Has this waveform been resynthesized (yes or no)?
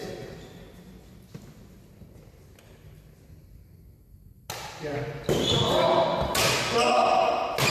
no